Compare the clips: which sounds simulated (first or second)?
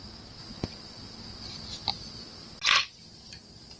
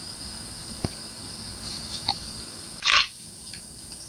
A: second